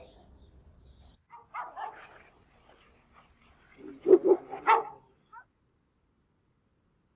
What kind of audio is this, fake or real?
real